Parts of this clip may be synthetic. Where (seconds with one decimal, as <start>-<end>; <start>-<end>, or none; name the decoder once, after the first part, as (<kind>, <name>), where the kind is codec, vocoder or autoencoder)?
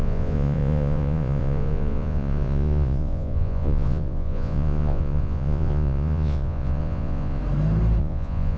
0.0-7.4 (vocoder, Vocos); 8.0-8.6